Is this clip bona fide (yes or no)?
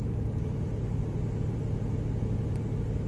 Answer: yes